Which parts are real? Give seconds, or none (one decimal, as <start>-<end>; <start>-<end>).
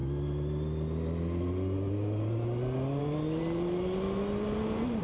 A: 0.0-5.0